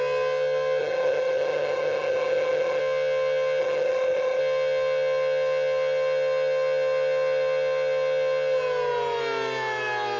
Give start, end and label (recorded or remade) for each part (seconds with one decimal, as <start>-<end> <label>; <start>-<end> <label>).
0.0-0.8 recorded; 0.8-2.8 remade; 2.8-3.6 recorded; 3.6-4.4 remade; 4.4-10.2 recorded